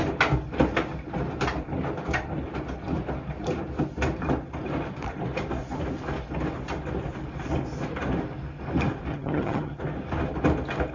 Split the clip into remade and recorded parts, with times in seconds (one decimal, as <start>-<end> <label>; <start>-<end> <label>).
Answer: 0.0-9.1 recorded; 9.1-9.8 remade; 9.8-10.9 recorded